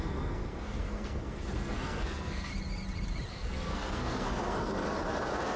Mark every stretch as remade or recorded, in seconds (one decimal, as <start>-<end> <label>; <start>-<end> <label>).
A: 0.0-2.5 remade; 2.5-3.3 recorded; 3.3-5.6 remade